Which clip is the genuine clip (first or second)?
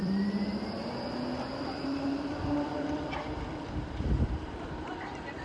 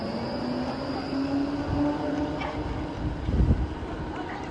second